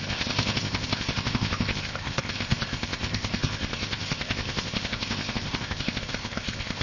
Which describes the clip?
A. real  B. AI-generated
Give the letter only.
B